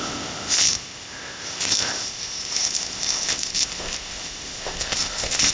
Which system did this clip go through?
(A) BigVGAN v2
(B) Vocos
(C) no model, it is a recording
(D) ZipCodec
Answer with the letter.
D